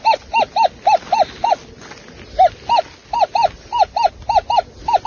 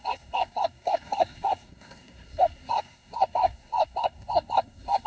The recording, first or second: first